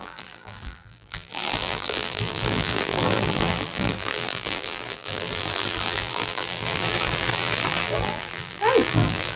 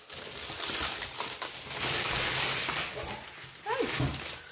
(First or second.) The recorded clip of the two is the second